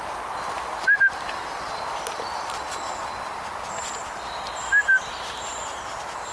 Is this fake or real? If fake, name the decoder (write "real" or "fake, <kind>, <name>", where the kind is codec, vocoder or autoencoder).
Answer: real